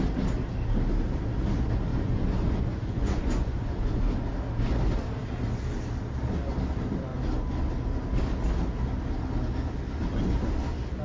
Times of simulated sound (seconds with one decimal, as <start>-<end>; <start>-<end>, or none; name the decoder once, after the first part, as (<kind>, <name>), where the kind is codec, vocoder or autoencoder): 1.9-4.0 (vocoder, Vocos)